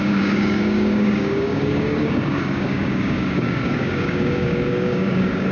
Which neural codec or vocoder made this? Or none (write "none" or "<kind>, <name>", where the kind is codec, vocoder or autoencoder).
codec, DAC